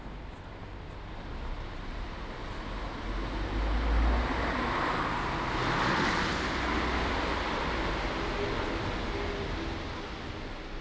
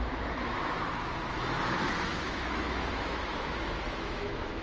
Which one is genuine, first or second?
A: first